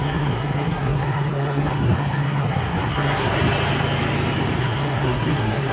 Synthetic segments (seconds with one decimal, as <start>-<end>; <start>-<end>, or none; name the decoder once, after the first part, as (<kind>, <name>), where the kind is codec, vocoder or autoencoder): 0.0-3.4 (codec, SNAC); 4.6-5.7